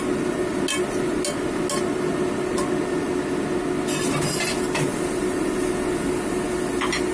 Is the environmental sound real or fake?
real